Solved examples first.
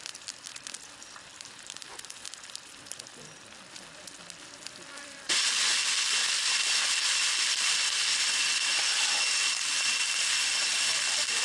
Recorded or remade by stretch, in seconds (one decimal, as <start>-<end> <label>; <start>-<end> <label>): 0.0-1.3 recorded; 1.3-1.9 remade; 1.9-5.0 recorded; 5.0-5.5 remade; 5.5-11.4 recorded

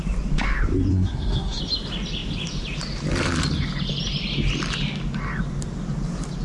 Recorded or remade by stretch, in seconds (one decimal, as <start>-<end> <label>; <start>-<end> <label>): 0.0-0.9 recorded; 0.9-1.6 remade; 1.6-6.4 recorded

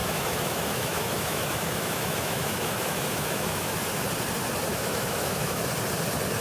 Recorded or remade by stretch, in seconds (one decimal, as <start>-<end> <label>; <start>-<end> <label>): 0.0-3.8 remade; 3.8-4.7 recorded; 4.7-5.6 remade; 5.6-6.4 recorded

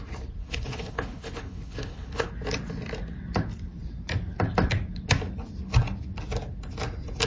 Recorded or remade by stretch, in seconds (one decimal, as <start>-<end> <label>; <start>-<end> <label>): 0.0-0.4 recorded; 0.4-2.3 remade; 2.3-7.3 recorded